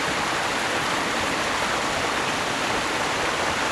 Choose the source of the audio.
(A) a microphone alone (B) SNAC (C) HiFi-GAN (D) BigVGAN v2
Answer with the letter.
A